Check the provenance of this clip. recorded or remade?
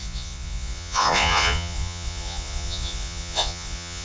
remade